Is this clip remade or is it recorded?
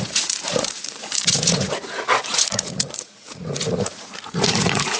remade